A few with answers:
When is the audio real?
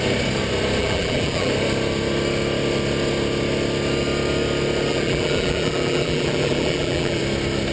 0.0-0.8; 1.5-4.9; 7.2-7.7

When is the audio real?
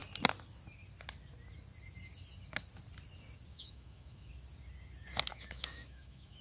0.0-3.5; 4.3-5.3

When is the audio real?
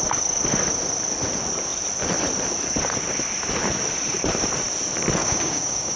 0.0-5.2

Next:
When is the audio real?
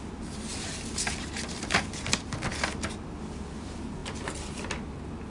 0.0-5.3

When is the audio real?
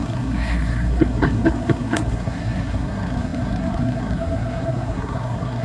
none